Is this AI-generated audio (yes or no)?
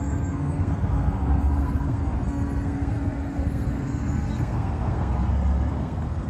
yes